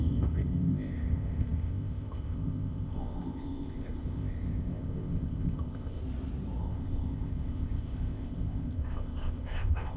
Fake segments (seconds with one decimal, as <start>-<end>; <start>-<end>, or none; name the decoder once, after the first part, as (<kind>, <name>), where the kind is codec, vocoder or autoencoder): 0.0-6.0 (codec, ZipCodec); 6.6-10.0

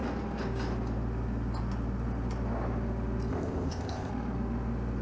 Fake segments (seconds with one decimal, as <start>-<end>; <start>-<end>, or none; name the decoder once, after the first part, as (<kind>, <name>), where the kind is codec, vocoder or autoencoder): 3.3-4.1 (codec, ZipCodec)

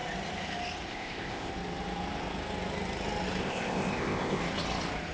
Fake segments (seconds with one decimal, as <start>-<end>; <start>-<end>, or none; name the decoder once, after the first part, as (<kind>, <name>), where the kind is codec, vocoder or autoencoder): 0.9-1.5 (codec, ZipCodec); 3.4-4.4

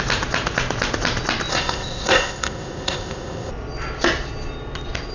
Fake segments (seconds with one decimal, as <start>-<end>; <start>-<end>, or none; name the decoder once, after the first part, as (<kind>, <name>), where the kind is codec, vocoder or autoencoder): 1.5-3.5 (codec, ZipCodec)